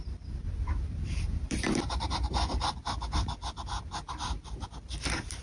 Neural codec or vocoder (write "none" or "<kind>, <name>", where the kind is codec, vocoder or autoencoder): vocoder, BigVGAN v2